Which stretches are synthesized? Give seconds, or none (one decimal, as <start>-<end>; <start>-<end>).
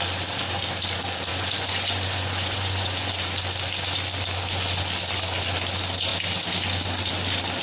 1.3-3.1